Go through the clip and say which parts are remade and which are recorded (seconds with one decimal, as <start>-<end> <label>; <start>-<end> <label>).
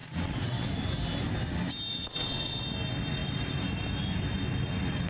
0.0-0.7 remade; 0.7-1.9 recorded; 1.9-2.6 remade; 2.6-5.1 recorded